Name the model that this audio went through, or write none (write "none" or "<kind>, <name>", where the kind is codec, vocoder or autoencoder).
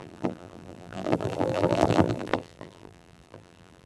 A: vocoder, BigVGAN v2